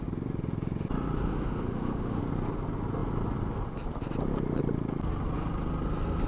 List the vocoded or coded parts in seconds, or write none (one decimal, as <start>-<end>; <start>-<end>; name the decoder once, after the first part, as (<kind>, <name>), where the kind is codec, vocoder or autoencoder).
1.3-2.2 (autoencoder, DAC-VAE)